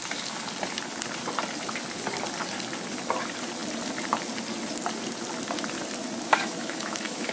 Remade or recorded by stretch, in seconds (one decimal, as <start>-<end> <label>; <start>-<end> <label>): 0.0-6.3 recorded; 6.3-7.3 remade